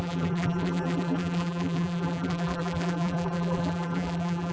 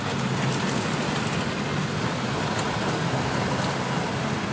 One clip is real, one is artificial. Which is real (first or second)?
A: second